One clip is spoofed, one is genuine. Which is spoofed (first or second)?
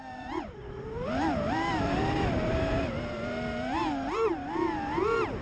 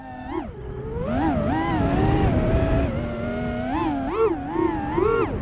first